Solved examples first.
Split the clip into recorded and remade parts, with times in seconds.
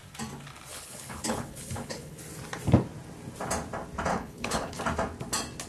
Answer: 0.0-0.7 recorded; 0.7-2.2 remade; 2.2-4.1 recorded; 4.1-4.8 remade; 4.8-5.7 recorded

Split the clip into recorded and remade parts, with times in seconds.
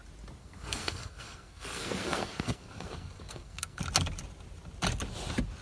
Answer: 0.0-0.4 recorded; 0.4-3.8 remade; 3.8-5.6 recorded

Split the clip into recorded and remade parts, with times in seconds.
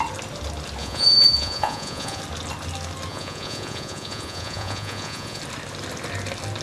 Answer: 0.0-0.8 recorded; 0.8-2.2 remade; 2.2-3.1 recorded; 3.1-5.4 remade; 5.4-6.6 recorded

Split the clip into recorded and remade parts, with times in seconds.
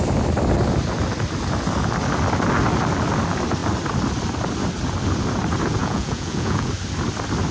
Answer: 0.0-5.8 recorded; 5.8-6.7 remade; 6.7-7.5 recorded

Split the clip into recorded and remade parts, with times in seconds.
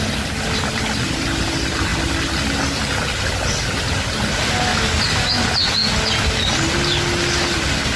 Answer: 0.0-8.0 recorded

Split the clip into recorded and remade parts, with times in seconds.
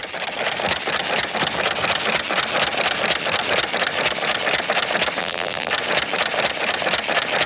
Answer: 0.0-5.2 recorded; 5.2-5.7 remade; 5.7-7.5 recorded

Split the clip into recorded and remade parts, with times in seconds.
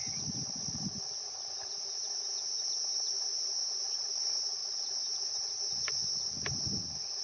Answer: 0.0-3.8 recorded; 3.8-4.6 remade; 4.6-5.1 recorded; 5.1-6.0 remade; 6.0-7.2 recorded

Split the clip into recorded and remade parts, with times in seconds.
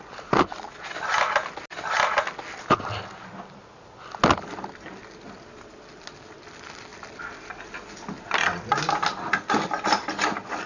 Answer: 0.0-10.7 recorded